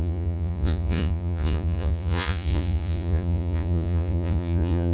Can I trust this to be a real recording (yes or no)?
no